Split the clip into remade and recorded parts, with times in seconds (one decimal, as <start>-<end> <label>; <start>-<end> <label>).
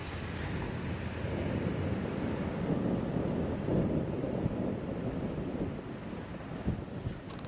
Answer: 0.0-3.7 recorded; 3.7-5.6 remade; 5.6-7.5 recorded